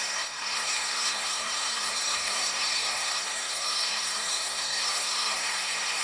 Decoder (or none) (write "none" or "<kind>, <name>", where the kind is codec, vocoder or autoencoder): codec, SNAC